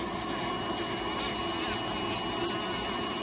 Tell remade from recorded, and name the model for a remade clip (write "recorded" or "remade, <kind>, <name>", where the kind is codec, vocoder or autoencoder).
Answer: recorded